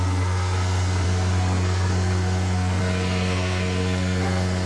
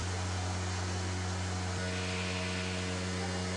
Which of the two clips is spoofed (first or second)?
first